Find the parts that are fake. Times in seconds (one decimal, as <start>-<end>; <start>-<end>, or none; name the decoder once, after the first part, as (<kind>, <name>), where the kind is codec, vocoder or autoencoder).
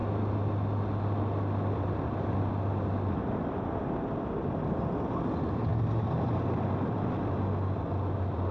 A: none